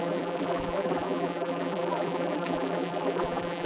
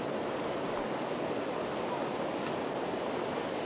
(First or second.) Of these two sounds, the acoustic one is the second